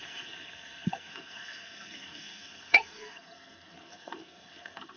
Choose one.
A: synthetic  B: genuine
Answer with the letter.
A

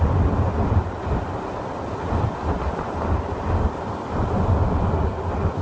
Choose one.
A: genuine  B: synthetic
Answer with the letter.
A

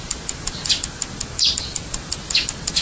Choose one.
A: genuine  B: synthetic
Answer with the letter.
A